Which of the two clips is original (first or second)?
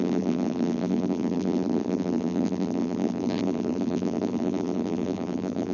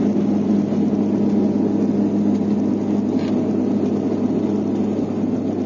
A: second